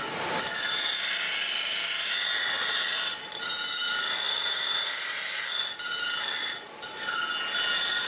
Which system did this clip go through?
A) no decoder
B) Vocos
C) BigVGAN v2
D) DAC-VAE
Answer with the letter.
A